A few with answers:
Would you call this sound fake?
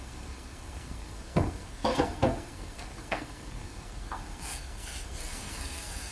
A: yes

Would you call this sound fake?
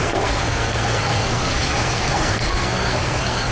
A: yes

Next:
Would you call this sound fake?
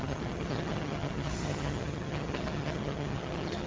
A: yes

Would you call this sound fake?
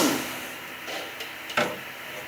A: no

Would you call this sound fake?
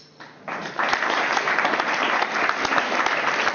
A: no